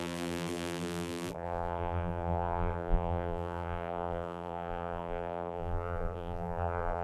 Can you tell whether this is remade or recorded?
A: remade